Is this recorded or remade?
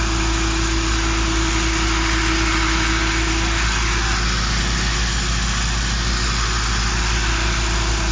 recorded